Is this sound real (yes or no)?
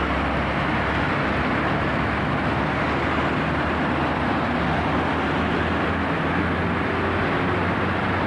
yes